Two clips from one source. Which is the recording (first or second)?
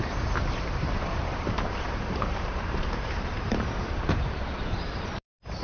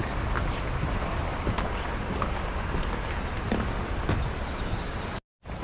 second